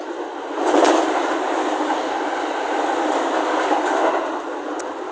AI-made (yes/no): no